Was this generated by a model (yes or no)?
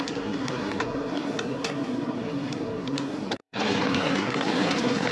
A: yes